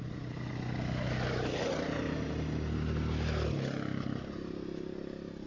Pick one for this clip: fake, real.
real